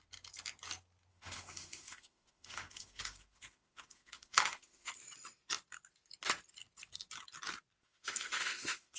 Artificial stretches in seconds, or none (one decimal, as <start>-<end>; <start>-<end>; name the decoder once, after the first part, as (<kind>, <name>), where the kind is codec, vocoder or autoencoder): 1.1-4.9 (autoencoder, DAC-VAE); 7.8-9.0